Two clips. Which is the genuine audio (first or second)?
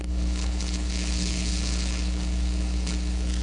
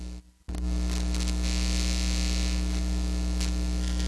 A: second